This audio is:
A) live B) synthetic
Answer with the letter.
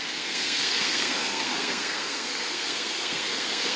B